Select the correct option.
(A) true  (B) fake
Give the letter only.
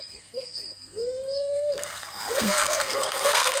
B